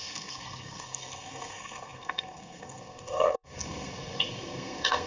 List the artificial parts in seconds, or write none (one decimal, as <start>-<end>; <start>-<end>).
0.0-5.1